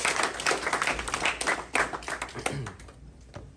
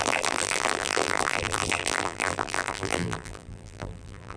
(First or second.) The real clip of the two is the first